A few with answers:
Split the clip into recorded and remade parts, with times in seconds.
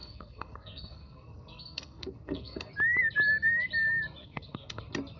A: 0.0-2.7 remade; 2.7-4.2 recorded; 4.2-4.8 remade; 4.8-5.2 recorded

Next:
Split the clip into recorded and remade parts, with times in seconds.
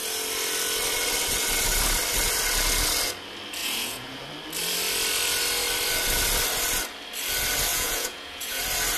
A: 0.0-3.6 recorded; 3.6-4.3 remade; 4.3-7.7 recorded; 7.7-8.6 remade; 8.6-9.0 recorded